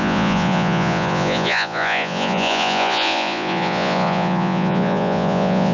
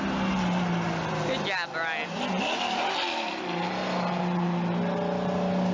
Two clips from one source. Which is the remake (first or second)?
first